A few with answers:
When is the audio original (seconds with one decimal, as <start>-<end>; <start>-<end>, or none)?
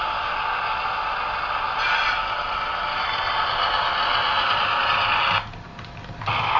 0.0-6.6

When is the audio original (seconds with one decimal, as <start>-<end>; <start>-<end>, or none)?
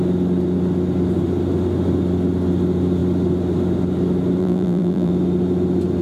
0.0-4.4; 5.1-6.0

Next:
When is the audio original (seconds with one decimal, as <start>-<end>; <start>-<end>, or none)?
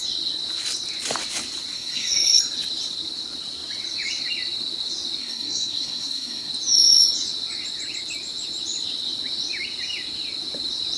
0.0-1.7; 2.4-5.2; 6.5-11.0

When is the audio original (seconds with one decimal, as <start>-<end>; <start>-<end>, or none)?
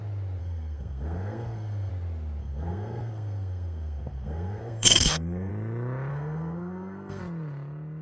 0.0-0.4; 1.9-2.4; 5.5-6.1; 7.2-8.0